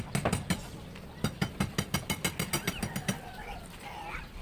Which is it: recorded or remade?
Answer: recorded